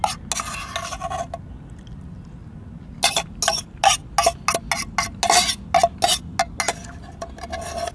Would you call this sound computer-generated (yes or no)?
no